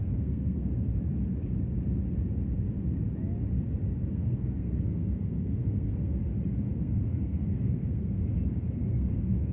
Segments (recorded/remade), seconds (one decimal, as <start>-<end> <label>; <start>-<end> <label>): 0.0-0.9 remade; 0.9-4.1 recorded; 4.1-6.2 remade; 6.2-6.8 recorded; 6.8-8.2 remade; 8.2-8.8 recorded; 8.8-9.5 remade